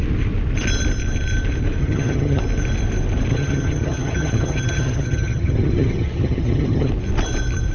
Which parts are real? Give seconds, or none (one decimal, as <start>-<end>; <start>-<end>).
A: 0.0-1.8; 2.4-3.3; 6.9-7.7